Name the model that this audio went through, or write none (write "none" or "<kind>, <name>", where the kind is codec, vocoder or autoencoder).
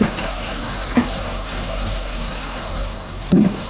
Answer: codec, SNAC